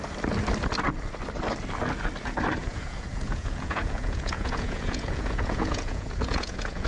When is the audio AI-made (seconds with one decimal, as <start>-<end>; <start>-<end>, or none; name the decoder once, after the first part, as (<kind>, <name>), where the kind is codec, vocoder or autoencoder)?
2.6-6.9 (vocoder, Vocos)